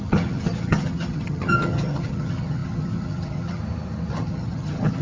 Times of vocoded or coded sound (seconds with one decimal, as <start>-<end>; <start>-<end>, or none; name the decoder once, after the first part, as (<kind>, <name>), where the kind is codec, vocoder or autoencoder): 0.0-3.6 (vocoder, HiFi-GAN); 4.1-5.0